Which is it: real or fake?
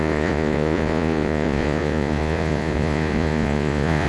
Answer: fake